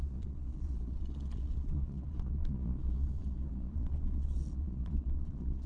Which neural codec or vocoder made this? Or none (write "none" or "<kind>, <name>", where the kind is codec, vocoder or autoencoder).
vocoder, Vocos